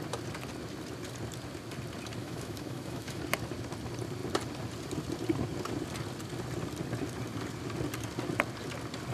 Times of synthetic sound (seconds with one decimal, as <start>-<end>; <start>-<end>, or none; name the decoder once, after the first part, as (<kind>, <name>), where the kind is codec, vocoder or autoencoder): 2.2-3.2 (autoencoder, DAC-VAE)